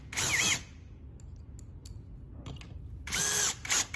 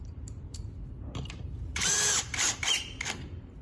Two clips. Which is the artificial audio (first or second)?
second